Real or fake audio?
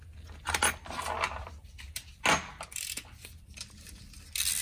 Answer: real